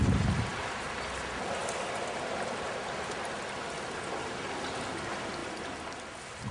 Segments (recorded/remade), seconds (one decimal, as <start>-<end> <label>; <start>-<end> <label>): 0.0-6.5 recorded